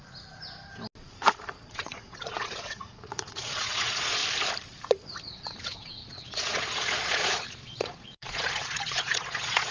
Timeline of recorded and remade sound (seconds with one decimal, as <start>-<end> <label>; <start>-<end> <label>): 0.0-1.4 recorded; 1.4-4.2 remade; 4.2-5.2 recorded; 5.2-9.7 remade